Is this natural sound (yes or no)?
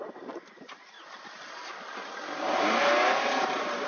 yes